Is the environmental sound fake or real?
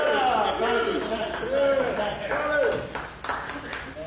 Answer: real